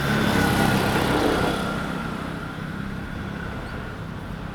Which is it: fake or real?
fake